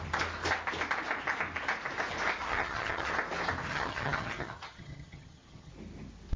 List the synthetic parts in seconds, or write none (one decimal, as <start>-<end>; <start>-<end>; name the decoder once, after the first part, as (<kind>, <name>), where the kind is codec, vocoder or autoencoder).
2.4-3.1 (vocoder, HiFi-GAN); 3.7-5.7